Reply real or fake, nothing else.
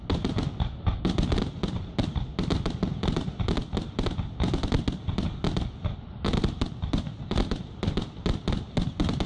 real